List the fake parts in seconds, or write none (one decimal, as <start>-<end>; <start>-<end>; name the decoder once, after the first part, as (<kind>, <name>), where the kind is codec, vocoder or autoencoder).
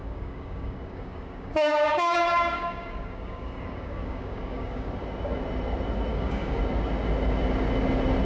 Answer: 0.0-4.9 (codec, DAC); 6.1-6.6